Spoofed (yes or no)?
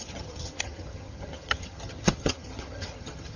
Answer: yes